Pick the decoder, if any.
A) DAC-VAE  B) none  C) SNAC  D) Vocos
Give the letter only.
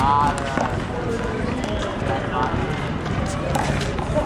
B